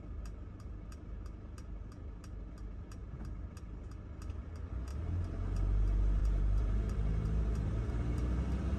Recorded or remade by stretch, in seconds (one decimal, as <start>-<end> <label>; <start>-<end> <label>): 0.0-4.9 recorded; 4.9-5.8 remade; 5.8-6.2 recorded; 6.2-7.9 remade; 7.9-8.8 recorded